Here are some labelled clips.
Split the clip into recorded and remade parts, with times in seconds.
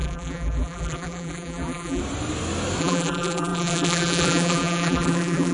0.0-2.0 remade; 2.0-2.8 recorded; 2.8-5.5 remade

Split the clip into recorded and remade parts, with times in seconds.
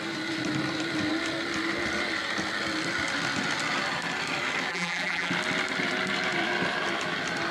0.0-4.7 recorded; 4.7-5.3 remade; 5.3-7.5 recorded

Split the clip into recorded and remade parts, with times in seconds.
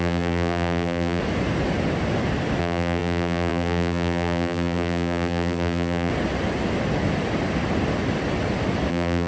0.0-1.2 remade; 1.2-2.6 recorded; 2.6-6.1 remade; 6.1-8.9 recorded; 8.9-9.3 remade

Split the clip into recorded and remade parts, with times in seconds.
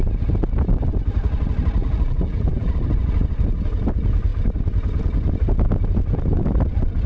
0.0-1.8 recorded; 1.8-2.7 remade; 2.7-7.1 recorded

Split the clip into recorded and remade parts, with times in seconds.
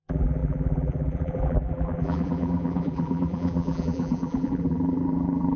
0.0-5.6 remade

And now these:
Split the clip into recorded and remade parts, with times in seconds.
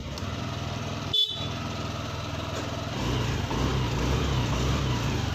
0.0-5.3 recorded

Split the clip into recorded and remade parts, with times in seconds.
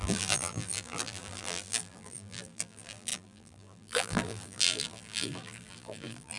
0.0-6.4 remade